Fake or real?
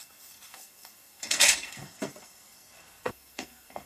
fake